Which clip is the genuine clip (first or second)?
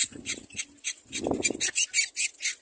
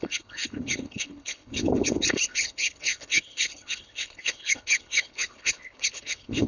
first